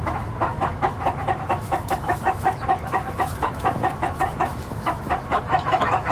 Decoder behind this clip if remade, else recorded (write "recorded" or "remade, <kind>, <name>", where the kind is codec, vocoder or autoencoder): remade, autoencoder, DAC-VAE